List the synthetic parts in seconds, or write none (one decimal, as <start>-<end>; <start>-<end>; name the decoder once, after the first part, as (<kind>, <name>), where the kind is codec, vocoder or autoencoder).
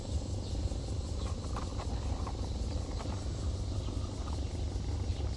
none